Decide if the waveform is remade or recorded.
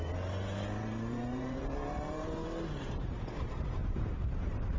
remade